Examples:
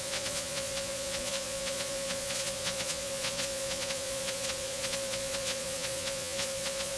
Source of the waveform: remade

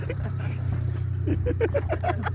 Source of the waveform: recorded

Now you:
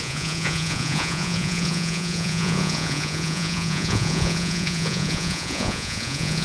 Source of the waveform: remade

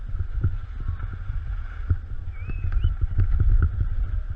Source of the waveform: recorded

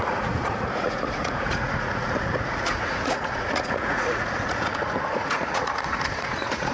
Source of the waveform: remade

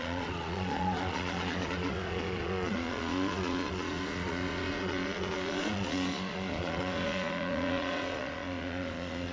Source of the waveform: remade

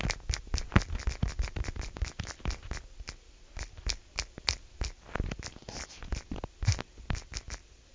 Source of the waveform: recorded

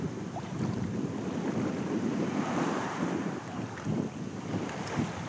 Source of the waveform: recorded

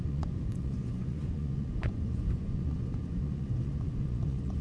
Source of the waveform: remade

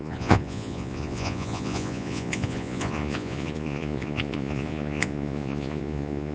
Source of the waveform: remade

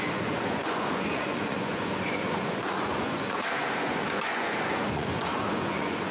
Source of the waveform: remade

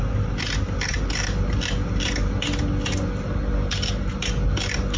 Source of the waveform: recorded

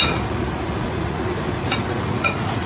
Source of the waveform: remade